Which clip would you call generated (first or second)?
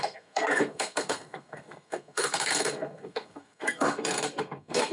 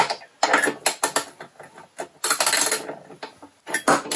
first